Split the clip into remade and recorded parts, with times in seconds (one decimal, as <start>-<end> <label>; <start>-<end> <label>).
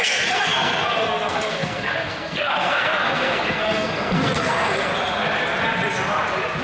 0.0-4.9 remade; 4.9-6.6 recorded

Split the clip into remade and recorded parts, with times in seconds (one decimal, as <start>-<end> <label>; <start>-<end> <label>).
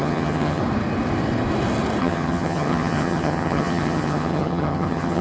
0.0-0.6 remade; 0.6-2.0 recorded; 2.0-5.2 remade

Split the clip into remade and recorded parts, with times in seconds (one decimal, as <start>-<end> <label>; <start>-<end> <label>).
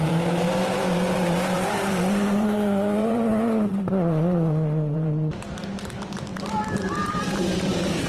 0.0-8.1 remade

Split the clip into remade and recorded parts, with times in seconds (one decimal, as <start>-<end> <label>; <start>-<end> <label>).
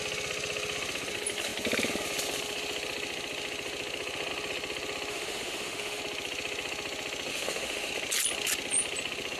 0.0-5.1 recorded; 5.1-6.0 remade; 6.0-7.3 recorded; 7.3-7.9 remade; 7.9-9.4 recorded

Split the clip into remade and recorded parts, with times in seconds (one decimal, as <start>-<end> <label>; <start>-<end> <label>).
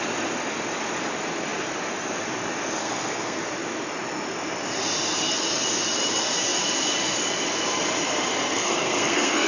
0.0-2.8 recorded; 2.8-3.4 remade; 3.4-8.5 recorded; 8.5-9.5 remade